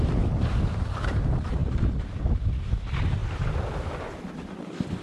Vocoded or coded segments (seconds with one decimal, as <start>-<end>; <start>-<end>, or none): 0.0-5.0